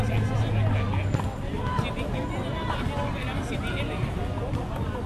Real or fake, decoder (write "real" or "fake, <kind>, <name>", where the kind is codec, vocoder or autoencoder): real